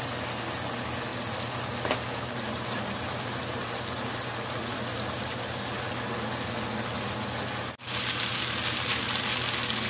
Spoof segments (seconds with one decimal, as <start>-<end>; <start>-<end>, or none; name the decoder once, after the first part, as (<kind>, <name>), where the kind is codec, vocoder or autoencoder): none